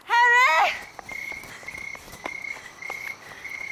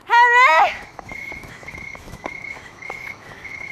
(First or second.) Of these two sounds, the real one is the first